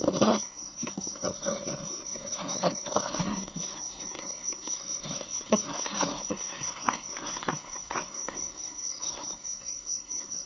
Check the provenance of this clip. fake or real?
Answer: fake